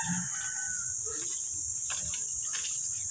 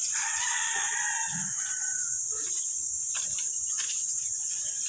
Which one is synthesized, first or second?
second